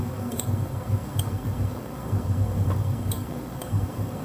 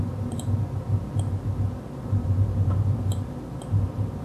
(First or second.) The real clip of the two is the second